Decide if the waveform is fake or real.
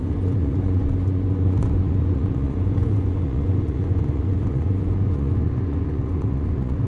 fake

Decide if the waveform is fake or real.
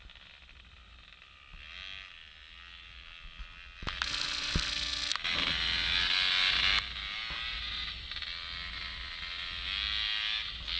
real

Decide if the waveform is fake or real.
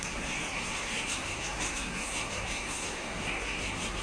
fake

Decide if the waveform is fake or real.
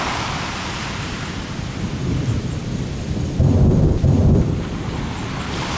fake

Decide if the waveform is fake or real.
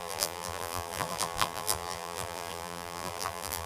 fake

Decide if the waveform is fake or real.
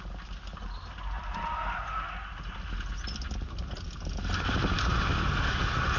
real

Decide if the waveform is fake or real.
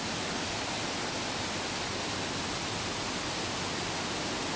real